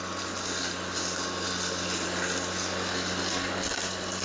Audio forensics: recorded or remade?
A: recorded